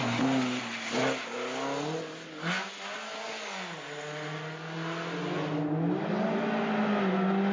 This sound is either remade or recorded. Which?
recorded